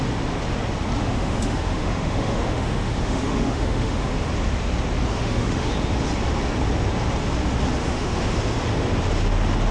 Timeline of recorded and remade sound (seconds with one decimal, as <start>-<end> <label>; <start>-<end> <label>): 0.0-1.0 recorded; 1.0-4.1 remade; 4.1-5.1 recorded; 5.1-5.7 remade; 5.7-7.8 recorded; 7.8-8.4 remade; 8.4-9.7 recorded